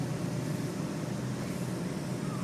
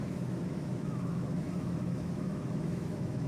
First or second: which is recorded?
first